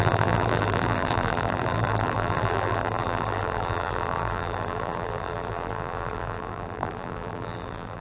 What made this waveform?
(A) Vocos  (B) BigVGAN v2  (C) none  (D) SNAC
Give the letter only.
B